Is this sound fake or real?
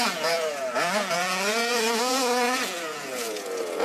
fake